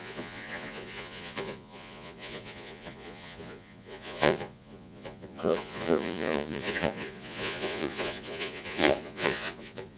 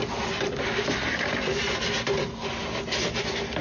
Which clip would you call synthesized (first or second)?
first